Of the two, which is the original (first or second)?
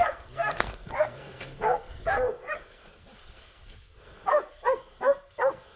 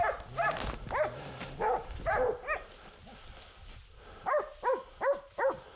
second